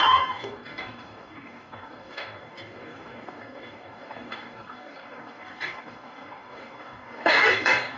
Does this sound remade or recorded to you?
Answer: remade